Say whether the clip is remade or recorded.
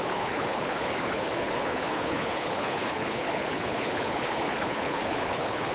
remade